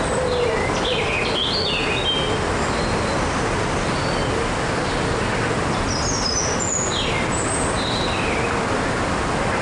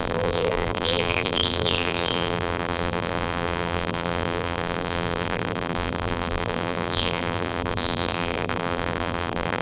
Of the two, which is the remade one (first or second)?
second